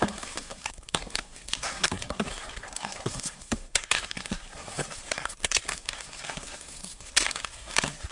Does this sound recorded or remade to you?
remade